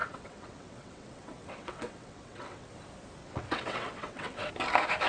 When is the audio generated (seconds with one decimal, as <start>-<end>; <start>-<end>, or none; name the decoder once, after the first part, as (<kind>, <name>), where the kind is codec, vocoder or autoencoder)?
0.0-2.7 (vocoder, WaveNeXt); 3.2-4.5